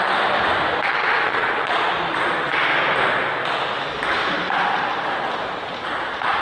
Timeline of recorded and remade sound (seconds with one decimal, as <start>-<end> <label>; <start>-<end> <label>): 0.0-0.9 recorded; 0.9-1.9 remade; 1.9-6.4 recorded